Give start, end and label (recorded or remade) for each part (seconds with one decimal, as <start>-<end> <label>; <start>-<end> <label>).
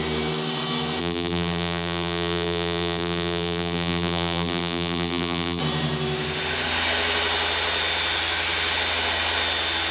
0.0-1.0 recorded; 1.0-5.6 remade; 5.6-9.9 recorded